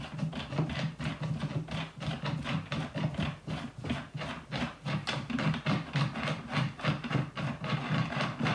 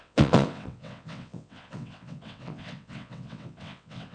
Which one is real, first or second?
first